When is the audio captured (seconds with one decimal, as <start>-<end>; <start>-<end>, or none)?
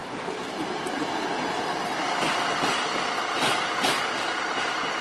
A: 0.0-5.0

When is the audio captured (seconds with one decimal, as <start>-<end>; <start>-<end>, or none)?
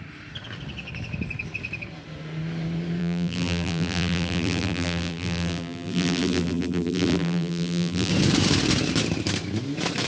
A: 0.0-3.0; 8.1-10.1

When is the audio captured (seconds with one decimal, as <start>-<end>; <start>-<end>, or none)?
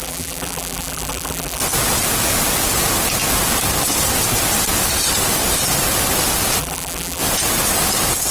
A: 1.6-6.6; 7.2-8.3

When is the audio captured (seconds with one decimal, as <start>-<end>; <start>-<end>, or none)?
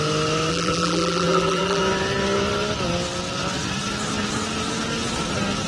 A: 0.0-0.5; 1.8-5.7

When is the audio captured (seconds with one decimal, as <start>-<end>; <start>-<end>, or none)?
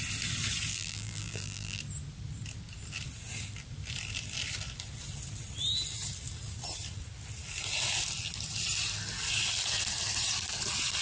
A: 0.0-0.7; 1.8-11.0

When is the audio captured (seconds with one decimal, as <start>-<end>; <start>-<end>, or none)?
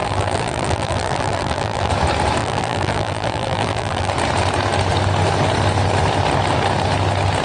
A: 1.9-2.4; 4.1-7.4